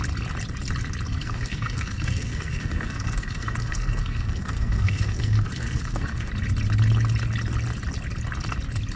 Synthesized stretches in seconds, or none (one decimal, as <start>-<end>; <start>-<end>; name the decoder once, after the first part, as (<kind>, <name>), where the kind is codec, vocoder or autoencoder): 1.1-6.3 (codec, SNAC)